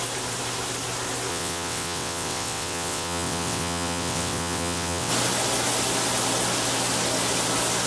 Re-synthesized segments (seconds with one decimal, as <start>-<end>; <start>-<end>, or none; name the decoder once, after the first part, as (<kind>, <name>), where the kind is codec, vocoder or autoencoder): 1.3-5.1 (vocoder, WaveNeXt)